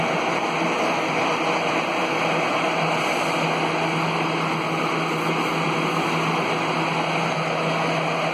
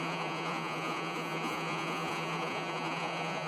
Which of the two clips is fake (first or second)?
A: second